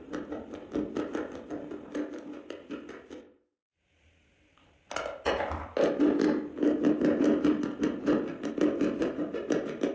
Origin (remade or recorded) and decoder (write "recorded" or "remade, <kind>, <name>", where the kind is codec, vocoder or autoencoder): recorded